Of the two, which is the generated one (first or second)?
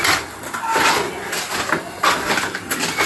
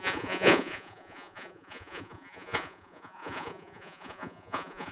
second